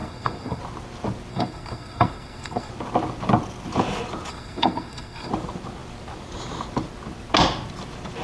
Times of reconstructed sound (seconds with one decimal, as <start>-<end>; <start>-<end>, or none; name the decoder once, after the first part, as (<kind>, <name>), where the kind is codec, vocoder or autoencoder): 0.0-0.6 (codec, SNAC); 1.3-2.7; 4.3-5.3